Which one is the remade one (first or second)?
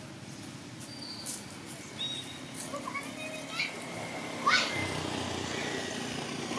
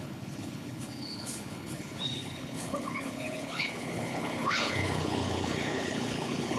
second